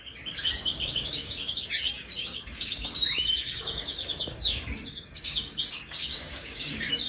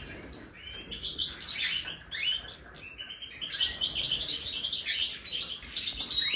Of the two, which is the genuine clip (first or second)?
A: second